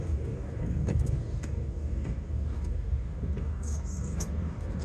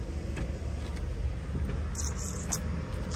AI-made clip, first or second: first